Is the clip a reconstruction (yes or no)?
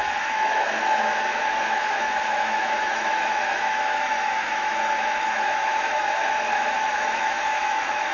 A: yes